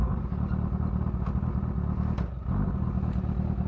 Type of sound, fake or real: real